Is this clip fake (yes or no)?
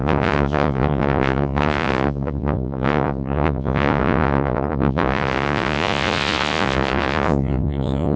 yes